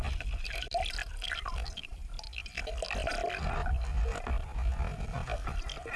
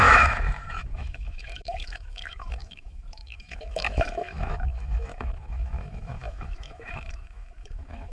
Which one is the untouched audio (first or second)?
first